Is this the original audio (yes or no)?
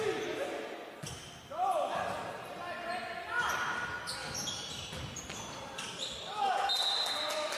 yes